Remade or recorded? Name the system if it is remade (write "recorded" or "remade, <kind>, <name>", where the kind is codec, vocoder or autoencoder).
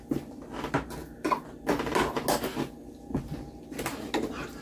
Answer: recorded